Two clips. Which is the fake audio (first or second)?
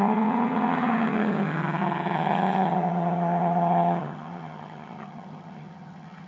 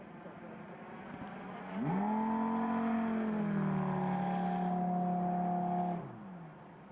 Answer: first